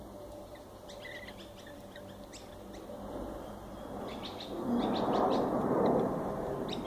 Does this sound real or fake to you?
fake